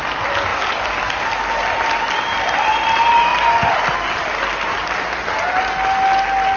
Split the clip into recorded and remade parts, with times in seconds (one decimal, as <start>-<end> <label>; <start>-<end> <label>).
0.0-6.6 recorded